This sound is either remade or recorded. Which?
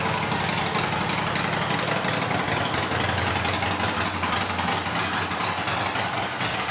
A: recorded